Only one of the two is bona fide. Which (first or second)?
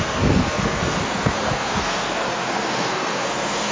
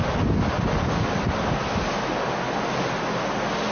second